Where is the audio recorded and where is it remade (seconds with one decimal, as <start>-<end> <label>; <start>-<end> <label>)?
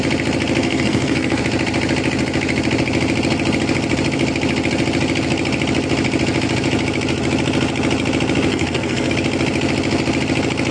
0.0-0.6 recorded; 0.6-1.4 remade; 1.4-8.5 recorded; 8.5-9.1 remade; 9.1-10.7 recorded